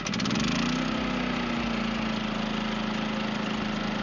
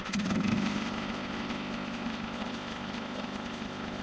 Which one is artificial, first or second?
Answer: second